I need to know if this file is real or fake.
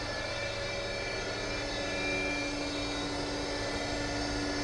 real